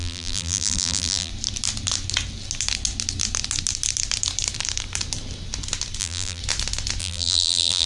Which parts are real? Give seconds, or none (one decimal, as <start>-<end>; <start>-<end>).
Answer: 1.3-6.0; 6.4-7.0